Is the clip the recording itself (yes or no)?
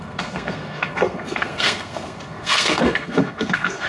no